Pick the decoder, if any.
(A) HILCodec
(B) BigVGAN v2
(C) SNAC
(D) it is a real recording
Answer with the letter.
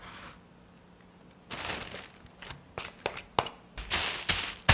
D